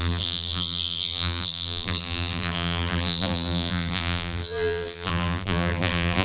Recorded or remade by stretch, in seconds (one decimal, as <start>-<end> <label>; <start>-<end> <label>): 0.0-6.2 remade